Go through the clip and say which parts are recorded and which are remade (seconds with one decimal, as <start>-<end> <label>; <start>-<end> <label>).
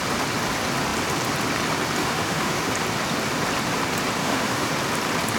0.0-2.0 recorded; 2.0-2.7 remade; 2.7-4.2 recorded; 4.2-4.7 remade; 4.7-5.4 recorded